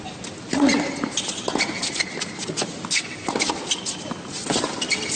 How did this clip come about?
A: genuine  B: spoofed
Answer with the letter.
A